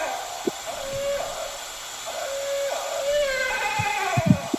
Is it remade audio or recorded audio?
recorded